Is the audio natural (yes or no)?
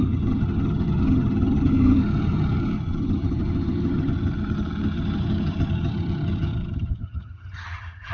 no